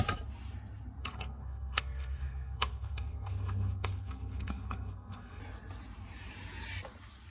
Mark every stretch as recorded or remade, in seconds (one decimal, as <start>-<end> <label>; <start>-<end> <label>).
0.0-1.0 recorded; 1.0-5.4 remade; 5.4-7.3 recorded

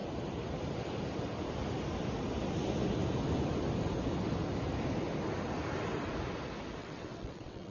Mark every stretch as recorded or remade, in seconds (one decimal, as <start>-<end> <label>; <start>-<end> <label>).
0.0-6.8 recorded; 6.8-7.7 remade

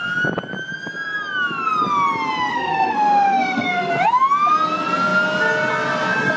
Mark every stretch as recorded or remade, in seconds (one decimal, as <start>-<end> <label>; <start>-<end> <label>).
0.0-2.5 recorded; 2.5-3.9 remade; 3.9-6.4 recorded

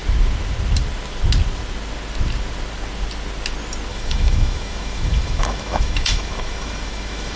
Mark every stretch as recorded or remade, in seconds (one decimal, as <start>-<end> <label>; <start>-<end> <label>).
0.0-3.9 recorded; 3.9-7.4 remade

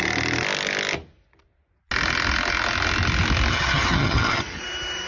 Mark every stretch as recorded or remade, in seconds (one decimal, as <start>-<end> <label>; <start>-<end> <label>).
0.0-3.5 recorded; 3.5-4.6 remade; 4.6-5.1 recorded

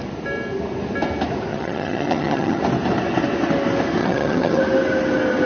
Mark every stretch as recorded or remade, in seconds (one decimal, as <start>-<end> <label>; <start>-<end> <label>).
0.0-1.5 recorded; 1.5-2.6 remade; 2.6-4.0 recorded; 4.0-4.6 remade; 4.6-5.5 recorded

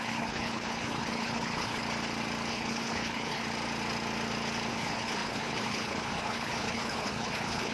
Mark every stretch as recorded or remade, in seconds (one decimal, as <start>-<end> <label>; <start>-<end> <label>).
0.0-1.8 remade; 1.8-2.5 recorded; 2.5-3.4 remade; 3.4-4.7 recorded; 4.7-7.7 remade

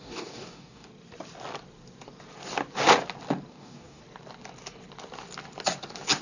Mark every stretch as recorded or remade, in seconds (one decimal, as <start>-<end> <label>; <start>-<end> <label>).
0.0-0.9 remade; 0.9-3.5 recorded; 3.5-4.0 remade; 4.0-6.2 recorded